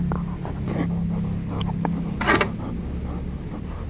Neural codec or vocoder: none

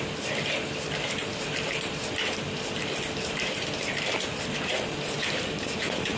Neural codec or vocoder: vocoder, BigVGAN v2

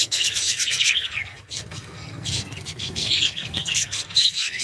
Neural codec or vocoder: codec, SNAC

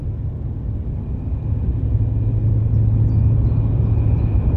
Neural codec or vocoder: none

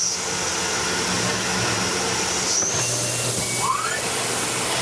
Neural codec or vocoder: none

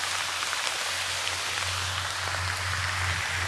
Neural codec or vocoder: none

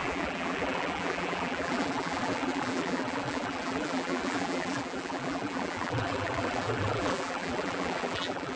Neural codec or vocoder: vocoder, BigVGAN v2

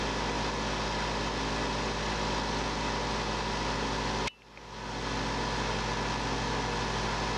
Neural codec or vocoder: none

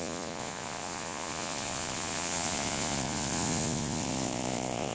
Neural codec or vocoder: vocoder, Vocos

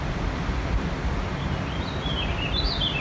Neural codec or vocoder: none